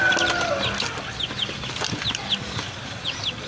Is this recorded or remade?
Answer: recorded